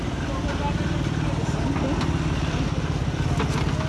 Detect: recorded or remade recorded